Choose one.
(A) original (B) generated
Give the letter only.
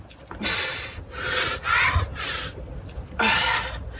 A